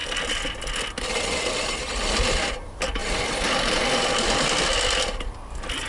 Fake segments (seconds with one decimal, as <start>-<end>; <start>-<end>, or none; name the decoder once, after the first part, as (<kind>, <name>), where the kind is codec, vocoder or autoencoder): none